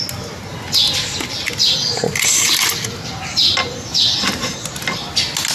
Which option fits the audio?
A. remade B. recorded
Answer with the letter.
B